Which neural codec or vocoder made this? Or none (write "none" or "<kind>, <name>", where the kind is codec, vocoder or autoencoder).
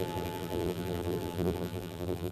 vocoder, BigVGAN v2